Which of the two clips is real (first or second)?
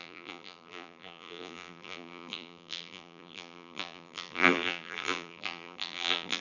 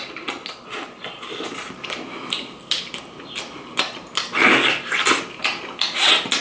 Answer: second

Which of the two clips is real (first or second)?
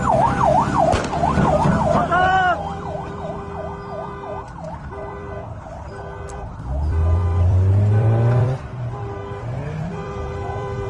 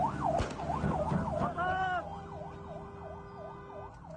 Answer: second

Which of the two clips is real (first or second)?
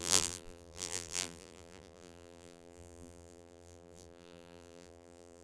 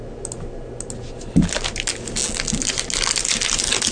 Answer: second